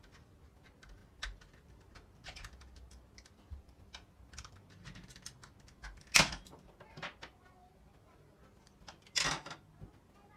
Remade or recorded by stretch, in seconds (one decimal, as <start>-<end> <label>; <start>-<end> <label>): 0.0-10.4 recorded